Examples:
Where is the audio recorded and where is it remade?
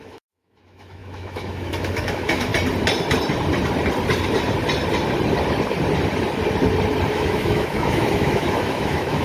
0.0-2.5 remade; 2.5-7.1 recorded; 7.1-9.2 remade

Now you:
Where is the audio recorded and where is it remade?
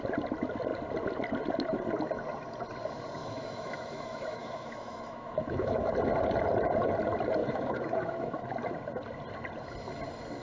0.0-3.2 recorded; 3.2-5.9 remade; 5.9-7.4 recorded; 7.4-8.5 remade; 8.5-10.4 recorded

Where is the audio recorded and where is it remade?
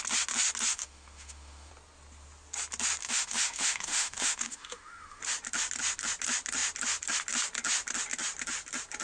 0.0-0.7 recorded; 0.7-1.7 remade; 1.7-3.0 recorded; 3.0-5.2 remade; 5.2-9.0 recorded